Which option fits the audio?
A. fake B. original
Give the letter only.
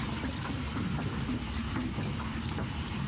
B